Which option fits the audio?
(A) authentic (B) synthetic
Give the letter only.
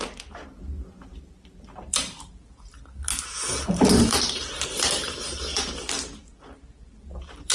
B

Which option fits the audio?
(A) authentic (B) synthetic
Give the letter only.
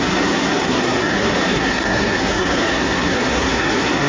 B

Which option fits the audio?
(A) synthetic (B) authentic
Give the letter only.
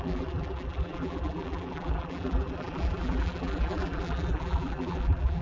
A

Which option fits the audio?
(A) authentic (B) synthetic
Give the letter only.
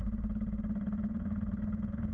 B